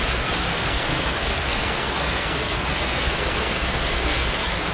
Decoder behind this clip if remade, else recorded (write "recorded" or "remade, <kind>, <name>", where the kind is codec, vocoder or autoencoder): remade, codec, SNAC